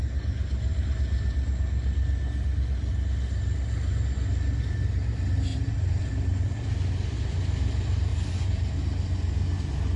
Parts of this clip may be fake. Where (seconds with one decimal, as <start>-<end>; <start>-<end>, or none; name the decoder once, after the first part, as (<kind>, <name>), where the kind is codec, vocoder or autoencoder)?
5.5-6.1 (vocoder, BigVGAN v2); 8.1-8.8

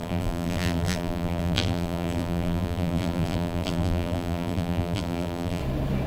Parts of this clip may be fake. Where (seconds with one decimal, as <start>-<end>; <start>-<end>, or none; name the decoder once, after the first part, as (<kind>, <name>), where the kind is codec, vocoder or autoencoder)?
0.0-5.6 (vocoder, BigVGAN v2)

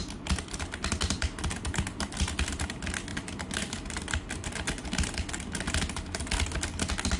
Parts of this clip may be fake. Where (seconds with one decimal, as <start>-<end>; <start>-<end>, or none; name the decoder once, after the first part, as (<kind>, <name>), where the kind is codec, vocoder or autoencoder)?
3.1-5.3 (vocoder, BigVGAN v2)

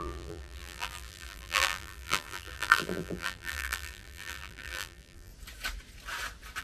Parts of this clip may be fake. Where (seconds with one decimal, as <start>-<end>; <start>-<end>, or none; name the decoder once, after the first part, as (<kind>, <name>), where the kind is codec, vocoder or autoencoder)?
0.0-5.3 (vocoder, BigVGAN v2)